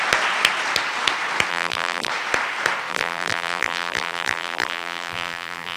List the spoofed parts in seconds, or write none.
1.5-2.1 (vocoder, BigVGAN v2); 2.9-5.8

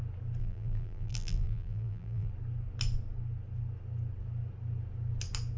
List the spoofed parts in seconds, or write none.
0.4-2.3 (vocoder, BigVGAN v2)

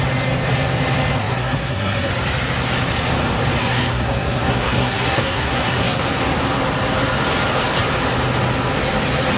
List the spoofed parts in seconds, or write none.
1.2-2.1 (codec, SNAC); 3.6-6.0

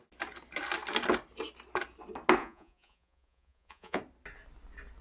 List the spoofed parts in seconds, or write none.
2.4-4.0 (vocoder, Vocos)

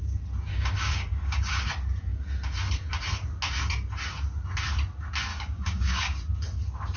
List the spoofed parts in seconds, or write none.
0.5-1.6 (codec, DAC); 5.3-6.2